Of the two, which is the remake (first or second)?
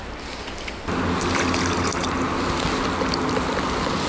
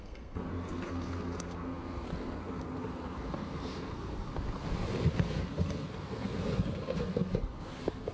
second